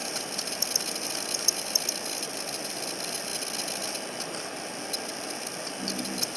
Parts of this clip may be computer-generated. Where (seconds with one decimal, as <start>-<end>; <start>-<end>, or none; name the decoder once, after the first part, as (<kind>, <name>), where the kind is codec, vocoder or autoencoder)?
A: 0.0-2.9 (vocoder, BigVGAN v2)